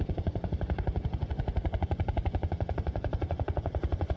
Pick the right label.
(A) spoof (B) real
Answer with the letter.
A